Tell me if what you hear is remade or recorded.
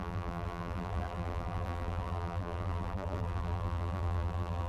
remade